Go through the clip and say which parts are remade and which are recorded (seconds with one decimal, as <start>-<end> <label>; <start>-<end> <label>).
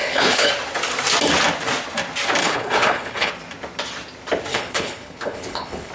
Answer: 0.0-0.5 remade; 0.5-2.4 recorded; 2.4-3.3 remade; 3.3-4.5 recorded; 4.5-5.9 remade